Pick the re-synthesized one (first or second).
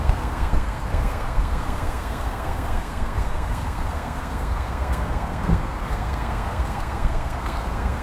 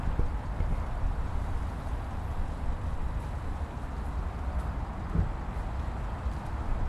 first